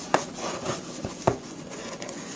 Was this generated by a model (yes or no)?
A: yes